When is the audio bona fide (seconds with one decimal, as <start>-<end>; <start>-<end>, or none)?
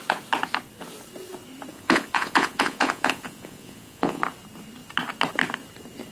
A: 0.0-1.7; 4.2-6.1